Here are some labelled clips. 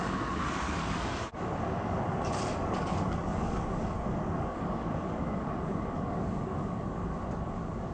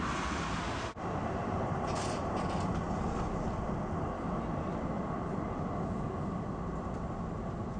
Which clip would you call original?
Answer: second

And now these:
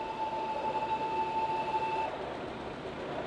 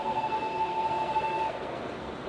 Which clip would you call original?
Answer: first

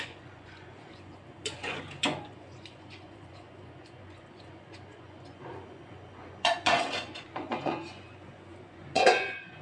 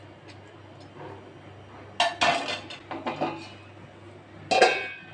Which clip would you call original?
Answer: second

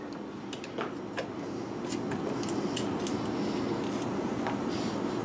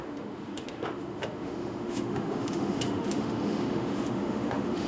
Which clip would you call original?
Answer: first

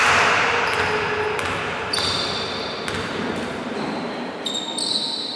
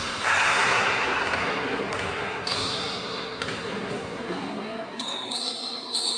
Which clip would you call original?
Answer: first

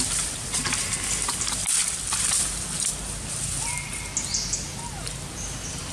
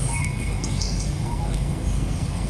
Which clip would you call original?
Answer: first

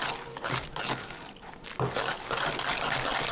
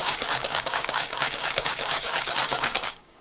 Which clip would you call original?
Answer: first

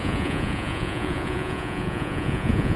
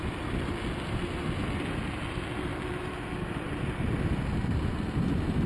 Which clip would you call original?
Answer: second